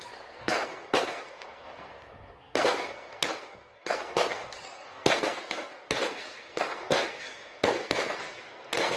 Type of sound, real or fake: fake